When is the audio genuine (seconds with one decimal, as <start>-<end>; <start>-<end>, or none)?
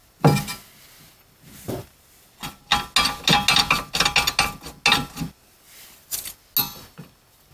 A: 0.0-7.5